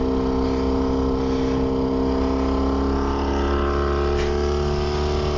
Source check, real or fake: real